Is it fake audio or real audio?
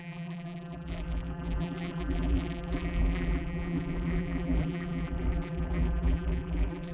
fake